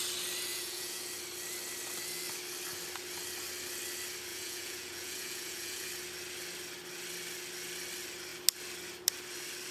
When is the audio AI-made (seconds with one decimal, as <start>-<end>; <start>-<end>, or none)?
0.5-1.0; 4.3-5.9